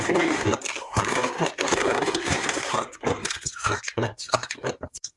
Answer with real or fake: fake